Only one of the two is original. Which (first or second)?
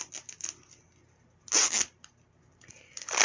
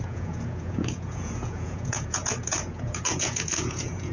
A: first